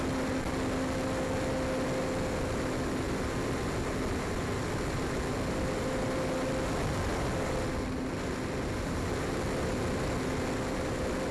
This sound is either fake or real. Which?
real